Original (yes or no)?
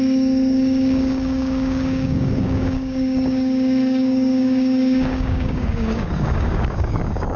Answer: no